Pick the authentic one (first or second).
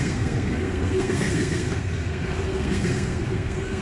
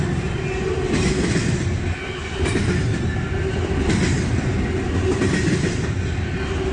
second